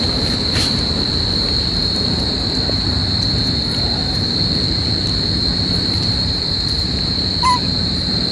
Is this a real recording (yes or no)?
no